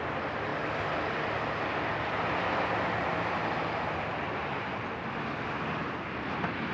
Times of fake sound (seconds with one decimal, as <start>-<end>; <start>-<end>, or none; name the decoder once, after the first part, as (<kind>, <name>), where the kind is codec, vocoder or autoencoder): none